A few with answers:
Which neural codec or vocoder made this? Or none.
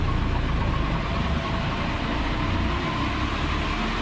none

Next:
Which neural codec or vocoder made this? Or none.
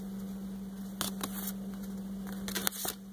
none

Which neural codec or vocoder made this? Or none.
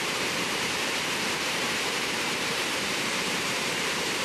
vocoder, BigVGAN v2